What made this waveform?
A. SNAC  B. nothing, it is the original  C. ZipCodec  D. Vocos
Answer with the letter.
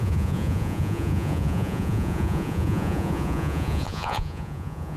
D